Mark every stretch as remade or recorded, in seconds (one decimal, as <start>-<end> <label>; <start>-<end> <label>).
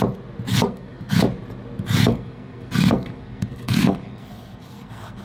0.0-0.5 recorded; 0.5-1.2 remade; 1.2-2.0 recorded; 2.0-5.2 remade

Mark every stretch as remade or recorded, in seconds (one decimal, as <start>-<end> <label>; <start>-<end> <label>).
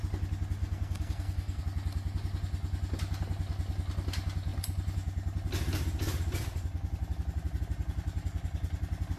0.0-0.6 recorded; 0.6-1.6 remade; 1.6-9.2 recorded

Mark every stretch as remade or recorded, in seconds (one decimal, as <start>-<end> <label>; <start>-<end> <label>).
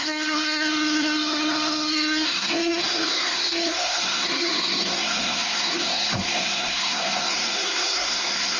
0.0-8.6 remade